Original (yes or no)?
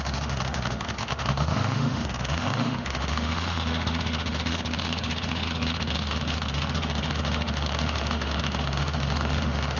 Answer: no